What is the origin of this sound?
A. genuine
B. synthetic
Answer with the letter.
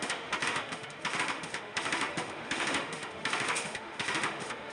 B